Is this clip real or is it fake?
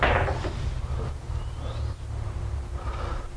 real